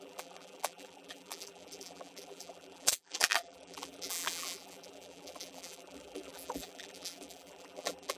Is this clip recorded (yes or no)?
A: no